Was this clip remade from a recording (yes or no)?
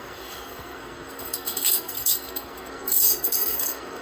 yes